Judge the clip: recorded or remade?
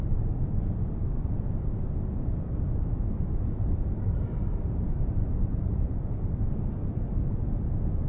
recorded